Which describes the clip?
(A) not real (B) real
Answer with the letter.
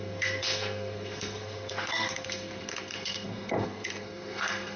A